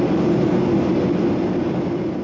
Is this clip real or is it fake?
real